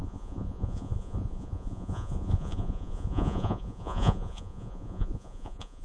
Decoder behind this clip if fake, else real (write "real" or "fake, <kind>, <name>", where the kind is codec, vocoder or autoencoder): fake, vocoder, Vocos